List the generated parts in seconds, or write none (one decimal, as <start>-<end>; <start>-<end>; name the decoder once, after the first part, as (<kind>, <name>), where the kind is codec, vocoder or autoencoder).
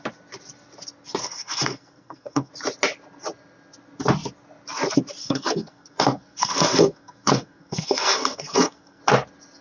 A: 1.2-2.5 (codec, SNAC); 5.2-9.0